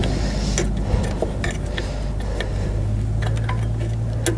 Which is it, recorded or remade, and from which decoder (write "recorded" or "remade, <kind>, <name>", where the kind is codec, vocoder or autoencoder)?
recorded